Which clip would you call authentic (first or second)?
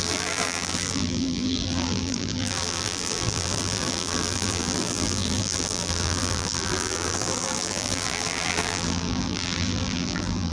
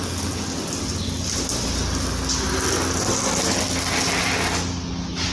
second